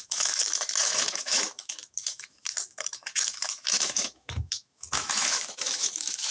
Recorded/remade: remade